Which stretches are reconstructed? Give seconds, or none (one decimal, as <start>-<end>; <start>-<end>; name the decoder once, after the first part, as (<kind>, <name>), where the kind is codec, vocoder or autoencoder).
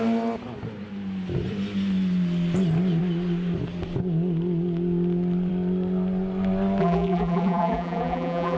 6.8-8.6 (vocoder, BigVGAN v2)